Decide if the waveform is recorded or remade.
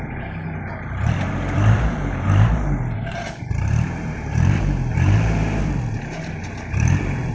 remade